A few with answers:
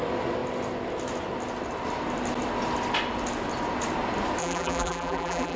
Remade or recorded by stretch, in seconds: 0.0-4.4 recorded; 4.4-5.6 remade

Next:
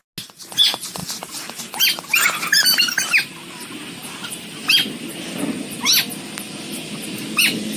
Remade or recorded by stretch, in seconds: 0.0-7.8 recorded

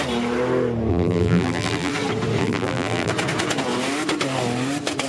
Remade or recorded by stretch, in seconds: 0.0-0.9 recorded; 0.9-1.9 remade; 1.9-2.4 recorded; 2.4-3.1 remade; 3.1-5.1 recorded

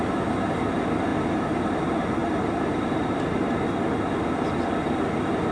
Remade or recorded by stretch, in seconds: 0.0-2.2 recorded; 2.2-3.5 remade; 3.5-5.5 recorded